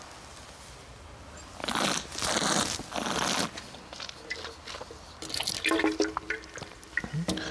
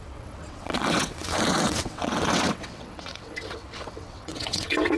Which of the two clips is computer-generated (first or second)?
second